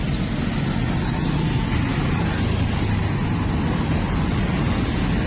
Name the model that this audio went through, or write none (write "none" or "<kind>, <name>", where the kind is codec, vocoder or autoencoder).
none